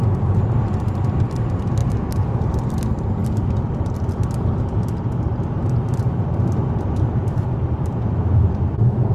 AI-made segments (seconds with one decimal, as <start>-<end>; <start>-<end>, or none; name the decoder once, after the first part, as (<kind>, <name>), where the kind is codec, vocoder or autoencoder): 0.0-1.8 (vocoder, BigVGAN v2); 2.3-9.1